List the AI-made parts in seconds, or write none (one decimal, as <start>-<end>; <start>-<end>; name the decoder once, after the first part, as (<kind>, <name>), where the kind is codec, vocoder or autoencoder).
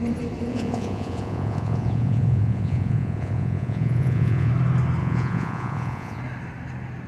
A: 0.5-4.5 (vocoder, Vocos); 5.0-6.2